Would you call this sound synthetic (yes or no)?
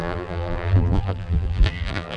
yes